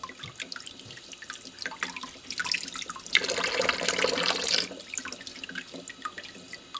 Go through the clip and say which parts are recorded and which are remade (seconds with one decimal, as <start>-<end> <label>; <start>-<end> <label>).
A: 0.0-6.8 recorded